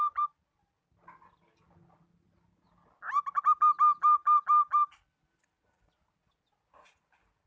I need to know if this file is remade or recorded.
recorded